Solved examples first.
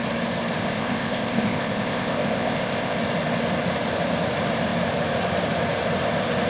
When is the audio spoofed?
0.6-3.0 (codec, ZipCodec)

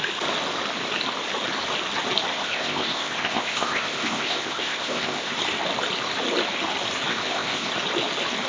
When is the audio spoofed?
2.3-5.3 (codec, ZipCodec); 7.1-7.7

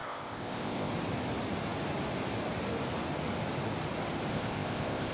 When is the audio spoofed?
0.0-0.9 (codec, ZipCodec); 4.3-5.1

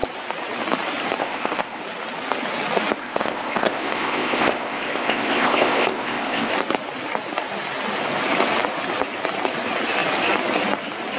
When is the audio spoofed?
1.2-1.8 (codec, ZipCodec); 3.0-6.5

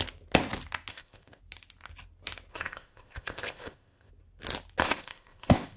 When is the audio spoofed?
0.9-1.4 (codec, ZipCodec); 2.5-4.1; 4.8-5.8

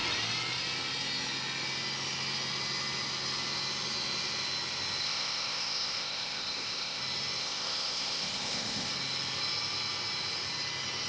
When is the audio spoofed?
5.0-7.0 (codec, ZipCodec); 7.4-8.9

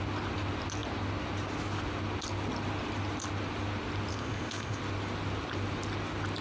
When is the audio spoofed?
4.1-4.8 (codec, ZipCodec)

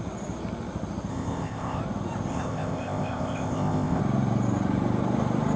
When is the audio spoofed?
1.1-1.8 (codec, ZipCodec); 2.3-4.0